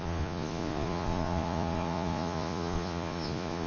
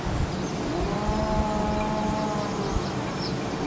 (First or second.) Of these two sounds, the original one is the second